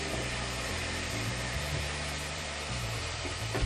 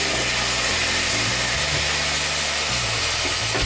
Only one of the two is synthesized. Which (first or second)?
first